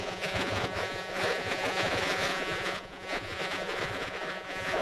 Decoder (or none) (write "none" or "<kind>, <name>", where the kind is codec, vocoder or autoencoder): vocoder, Vocos